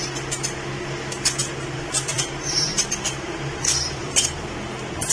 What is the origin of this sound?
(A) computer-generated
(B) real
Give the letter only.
A